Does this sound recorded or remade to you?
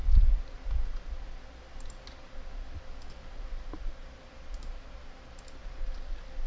recorded